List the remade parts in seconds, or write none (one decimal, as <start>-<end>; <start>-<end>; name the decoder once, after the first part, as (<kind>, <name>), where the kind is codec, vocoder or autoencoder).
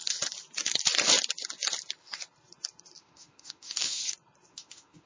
3.0-4.0 (autoencoder, DAC-VAE); 4.5-5.1